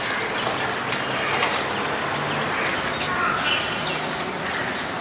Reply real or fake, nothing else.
real